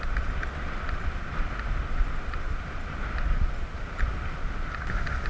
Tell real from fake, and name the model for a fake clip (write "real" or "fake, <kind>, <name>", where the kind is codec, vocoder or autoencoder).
real